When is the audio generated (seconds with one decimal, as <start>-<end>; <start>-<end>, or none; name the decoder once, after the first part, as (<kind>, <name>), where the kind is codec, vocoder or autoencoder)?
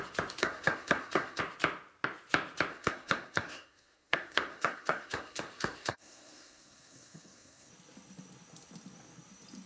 0.4-1.4 (codec, SNAC); 2.7-7.7